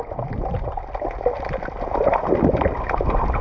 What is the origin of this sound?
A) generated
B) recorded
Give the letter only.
B